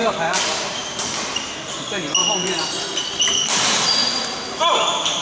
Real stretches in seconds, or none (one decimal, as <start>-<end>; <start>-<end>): 1.4-2.2; 3.1-4.0